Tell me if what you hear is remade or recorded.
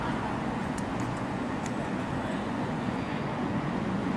remade